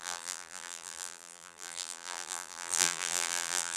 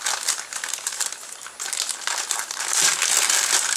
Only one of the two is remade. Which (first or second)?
first